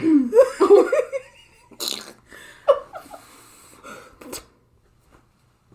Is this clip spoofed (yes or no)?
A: yes